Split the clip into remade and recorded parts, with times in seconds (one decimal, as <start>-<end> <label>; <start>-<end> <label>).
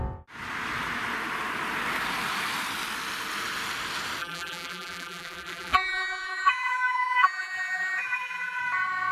0.0-4.2 recorded; 4.2-8.6 remade; 8.6-9.1 recorded